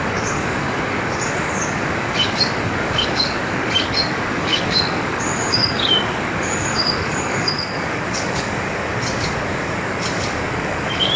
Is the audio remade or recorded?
remade